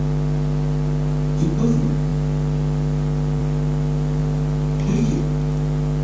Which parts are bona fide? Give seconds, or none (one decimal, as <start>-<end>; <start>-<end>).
0.0-6.0